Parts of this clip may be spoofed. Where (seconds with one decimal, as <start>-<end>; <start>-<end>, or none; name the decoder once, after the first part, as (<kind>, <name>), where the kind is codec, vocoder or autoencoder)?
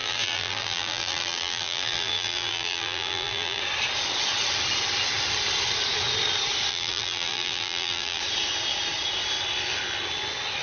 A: 0.0-3.6 (vocoder, BigVGAN v2); 6.7-8.2